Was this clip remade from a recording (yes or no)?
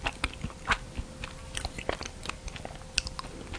no